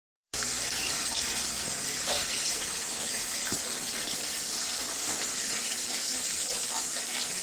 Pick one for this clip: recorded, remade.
remade